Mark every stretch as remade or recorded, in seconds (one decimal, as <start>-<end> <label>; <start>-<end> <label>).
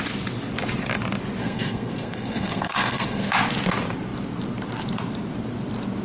0.0-1.4 recorded; 1.4-3.3 remade; 3.3-6.0 recorded